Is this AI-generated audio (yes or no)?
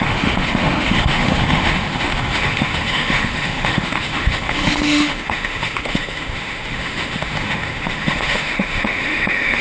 yes